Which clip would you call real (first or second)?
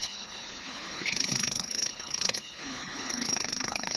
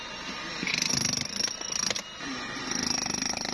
second